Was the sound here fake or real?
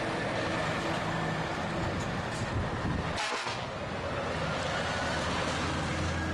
real